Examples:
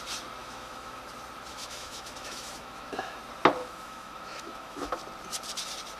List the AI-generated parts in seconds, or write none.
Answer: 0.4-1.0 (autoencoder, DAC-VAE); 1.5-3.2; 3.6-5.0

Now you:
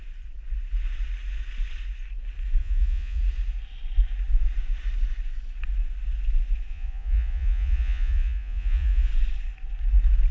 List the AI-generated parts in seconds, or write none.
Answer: 2.6-3.2 (vocoder, Vocos); 6.7-9.1

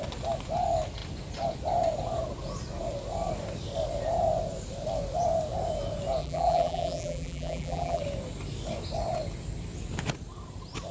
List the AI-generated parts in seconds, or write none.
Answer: 6.2-8.0 (vocoder, BigVGAN v2)

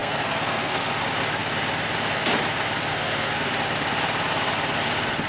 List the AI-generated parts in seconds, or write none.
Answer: 0.0-0.9 (codec, SNAC); 2.9-3.5

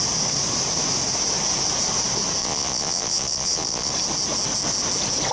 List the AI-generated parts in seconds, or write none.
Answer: 2.4-3.9 (vocoder, Vocos)

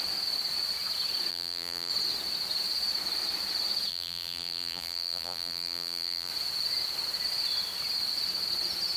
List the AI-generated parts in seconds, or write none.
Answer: 1.3-1.9 (vocoder, BigVGAN v2); 3.9-6.3

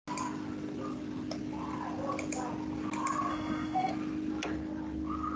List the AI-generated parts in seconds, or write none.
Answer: 3.3-3.9 (autoencoder, DAC-VAE)